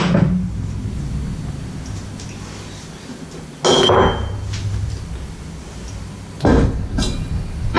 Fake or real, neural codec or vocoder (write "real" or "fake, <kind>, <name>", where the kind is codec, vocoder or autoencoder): real